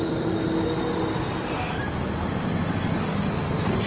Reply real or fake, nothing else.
real